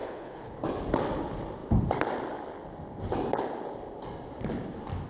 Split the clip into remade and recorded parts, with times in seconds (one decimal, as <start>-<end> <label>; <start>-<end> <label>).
0.0-0.5 remade; 0.5-5.1 recorded